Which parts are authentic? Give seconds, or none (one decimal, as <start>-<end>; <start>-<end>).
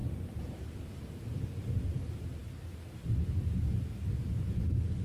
0.0-5.0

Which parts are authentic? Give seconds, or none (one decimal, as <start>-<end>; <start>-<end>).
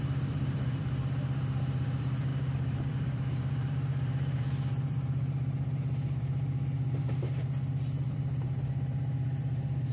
none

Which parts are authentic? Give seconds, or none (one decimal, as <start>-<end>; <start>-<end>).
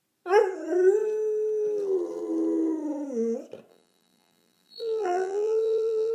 0.0-3.7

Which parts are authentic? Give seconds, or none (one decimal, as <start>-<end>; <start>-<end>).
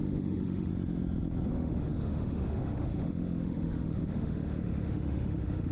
0.7-1.5